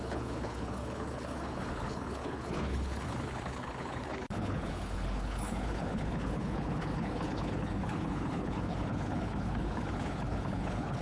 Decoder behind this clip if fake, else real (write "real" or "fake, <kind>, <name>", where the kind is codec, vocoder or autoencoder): fake, codec, HILCodec